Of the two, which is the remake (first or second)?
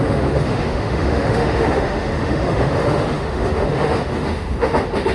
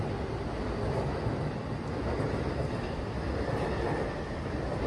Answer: first